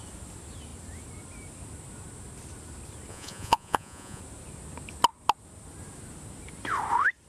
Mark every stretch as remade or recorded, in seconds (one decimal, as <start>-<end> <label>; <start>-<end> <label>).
0.0-3.1 recorded; 3.1-4.2 remade; 4.2-7.3 recorded